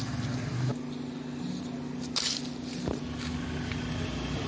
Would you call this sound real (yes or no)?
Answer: yes